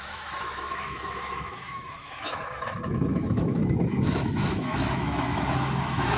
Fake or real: fake